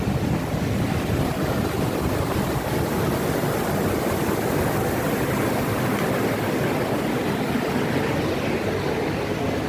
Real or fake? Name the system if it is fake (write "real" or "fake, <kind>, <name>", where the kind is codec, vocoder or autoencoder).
real